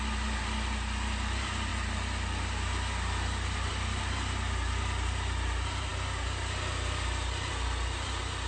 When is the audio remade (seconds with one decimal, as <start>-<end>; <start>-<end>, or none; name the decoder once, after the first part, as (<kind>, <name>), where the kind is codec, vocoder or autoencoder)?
none